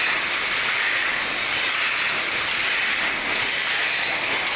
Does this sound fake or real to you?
real